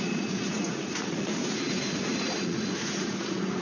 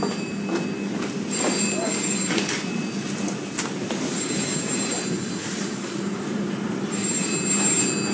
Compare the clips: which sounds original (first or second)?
second